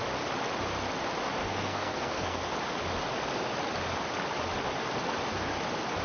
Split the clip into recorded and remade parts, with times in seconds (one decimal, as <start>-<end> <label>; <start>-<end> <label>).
0.0-1.4 recorded; 1.4-2.5 remade; 2.5-6.0 recorded